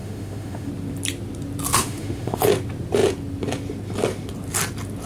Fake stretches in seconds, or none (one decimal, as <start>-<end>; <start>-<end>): 0.0-0.7; 1.8-2.4